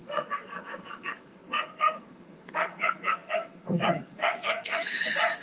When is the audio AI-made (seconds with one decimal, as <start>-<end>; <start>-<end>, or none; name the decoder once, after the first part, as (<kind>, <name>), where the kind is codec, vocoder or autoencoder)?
0.0-5.4 (codec, SNAC)